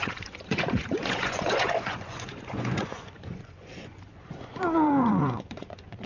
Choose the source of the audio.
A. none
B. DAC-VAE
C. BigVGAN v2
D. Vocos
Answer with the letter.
D